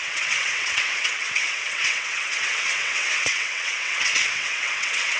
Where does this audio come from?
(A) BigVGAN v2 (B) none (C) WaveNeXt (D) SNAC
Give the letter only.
C